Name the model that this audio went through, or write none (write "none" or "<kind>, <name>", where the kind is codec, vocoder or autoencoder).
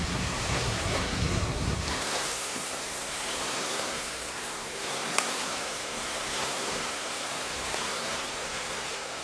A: codec, SNAC